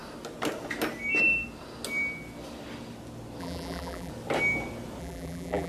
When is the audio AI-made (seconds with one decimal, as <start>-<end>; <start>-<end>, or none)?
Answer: 3.4-4.1; 5.0-5.7